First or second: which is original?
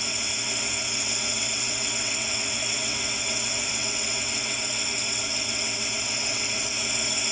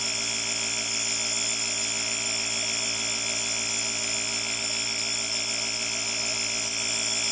second